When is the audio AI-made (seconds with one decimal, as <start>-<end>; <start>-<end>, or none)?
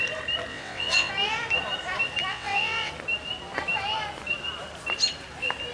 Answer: 0.5-1.1; 2.3-2.9